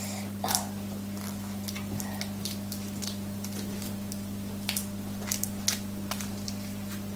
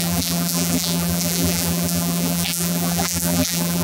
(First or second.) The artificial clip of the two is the second